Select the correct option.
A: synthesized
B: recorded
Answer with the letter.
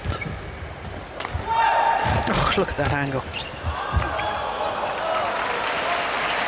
B